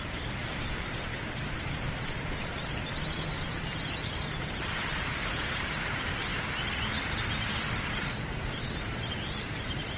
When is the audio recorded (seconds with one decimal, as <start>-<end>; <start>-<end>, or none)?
6.2-7.2